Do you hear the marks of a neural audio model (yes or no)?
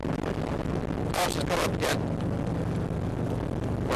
no